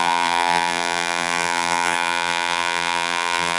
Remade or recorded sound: remade